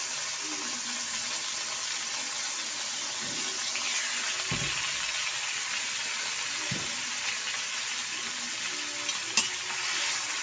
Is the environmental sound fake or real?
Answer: real